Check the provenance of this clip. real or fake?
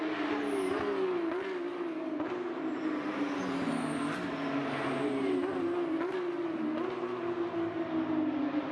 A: real